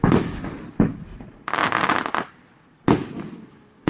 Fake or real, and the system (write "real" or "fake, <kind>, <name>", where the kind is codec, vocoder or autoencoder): real